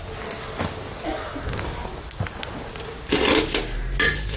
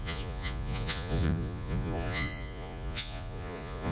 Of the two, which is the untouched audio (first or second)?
first